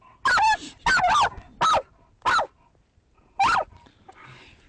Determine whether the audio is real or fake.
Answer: real